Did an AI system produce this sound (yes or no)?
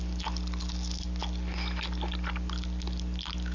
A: no